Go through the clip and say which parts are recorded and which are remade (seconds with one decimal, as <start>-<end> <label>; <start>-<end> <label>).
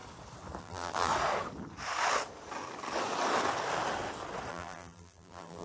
0.0-0.6 recorded; 0.6-1.1 remade; 1.1-4.5 recorded; 4.5-5.6 remade